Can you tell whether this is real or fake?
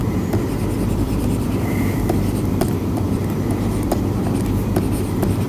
fake